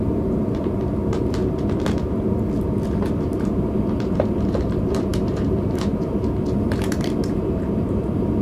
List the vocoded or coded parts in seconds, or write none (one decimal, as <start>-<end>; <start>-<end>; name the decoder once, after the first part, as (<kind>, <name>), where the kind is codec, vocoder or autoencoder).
0.0-1.4 (vocoder, BigVGAN v2); 3.0-8.4